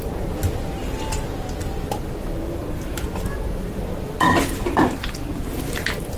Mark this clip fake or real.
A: real